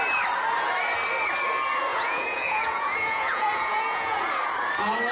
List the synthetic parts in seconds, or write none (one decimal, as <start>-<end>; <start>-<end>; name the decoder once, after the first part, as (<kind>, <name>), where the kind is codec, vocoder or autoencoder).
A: 1.9-4.4 (vocoder, Vocos)